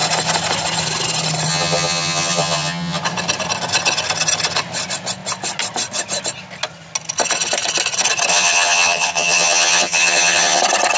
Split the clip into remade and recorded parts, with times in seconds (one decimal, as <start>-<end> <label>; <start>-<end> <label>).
0.0-1.5 recorded; 1.5-3.0 remade; 3.0-8.3 recorded; 8.3-10.6 remade; 10.6-11.0 recorded